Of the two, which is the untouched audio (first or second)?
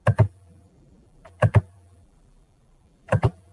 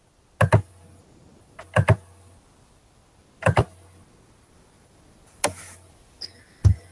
second